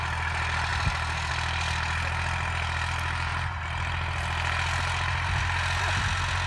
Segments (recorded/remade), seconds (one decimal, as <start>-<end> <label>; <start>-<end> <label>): 0.0-6.5 recorded